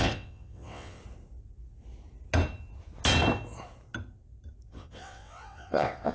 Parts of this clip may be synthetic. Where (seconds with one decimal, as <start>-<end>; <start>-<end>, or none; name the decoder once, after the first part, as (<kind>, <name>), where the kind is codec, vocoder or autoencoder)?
0.0-1.0 (vocoder, WaveNeXt); 4.7-6.1